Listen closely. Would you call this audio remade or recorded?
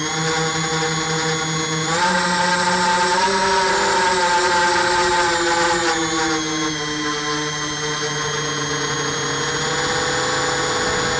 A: recorded